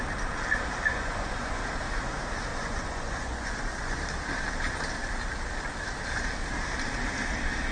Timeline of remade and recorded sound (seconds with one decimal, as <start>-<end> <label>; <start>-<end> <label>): 0.0-0.9 recorded; 0.9-1.6 remade; 1.6-2.5 recorded; 2.5-4.0 remade; 4.0-7.7 recorded